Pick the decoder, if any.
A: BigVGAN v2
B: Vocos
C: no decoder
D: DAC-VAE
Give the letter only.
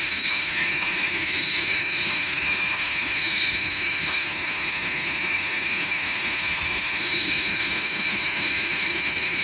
D